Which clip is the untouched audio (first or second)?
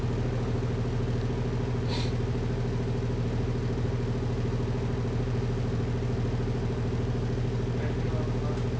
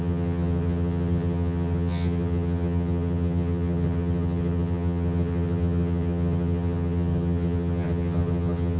first